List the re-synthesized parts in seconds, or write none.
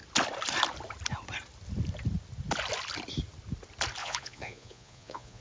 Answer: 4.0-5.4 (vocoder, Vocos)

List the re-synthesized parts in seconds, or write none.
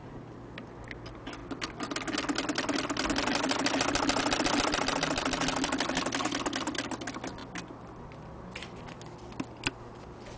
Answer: none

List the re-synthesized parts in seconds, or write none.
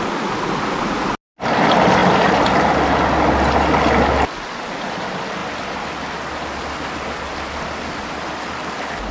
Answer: none